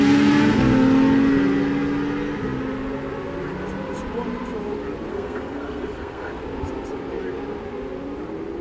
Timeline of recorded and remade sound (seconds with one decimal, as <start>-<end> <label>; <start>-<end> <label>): 0.0-5.1 recorded; 5.1-6.4 remade; 6.4-8.6 recorded